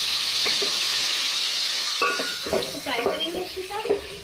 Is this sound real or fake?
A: fake